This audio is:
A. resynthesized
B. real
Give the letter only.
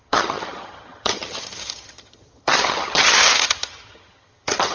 A